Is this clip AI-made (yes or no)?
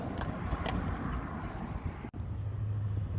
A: no